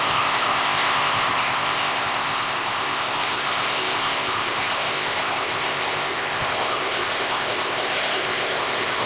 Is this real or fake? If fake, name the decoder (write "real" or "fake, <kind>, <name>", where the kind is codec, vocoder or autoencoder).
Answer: fake, codec, ZipCodec